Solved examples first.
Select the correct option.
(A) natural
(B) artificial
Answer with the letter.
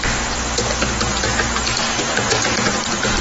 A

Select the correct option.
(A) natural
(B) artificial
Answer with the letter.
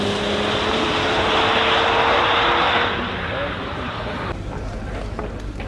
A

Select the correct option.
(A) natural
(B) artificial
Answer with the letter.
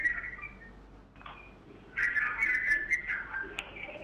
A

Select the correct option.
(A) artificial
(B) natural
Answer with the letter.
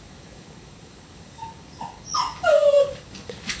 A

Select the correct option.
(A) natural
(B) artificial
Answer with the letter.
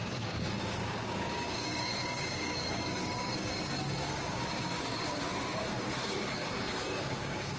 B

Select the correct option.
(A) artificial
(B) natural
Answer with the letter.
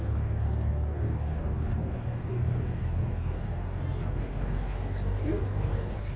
A